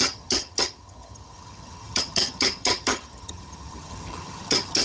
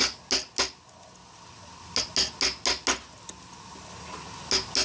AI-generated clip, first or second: first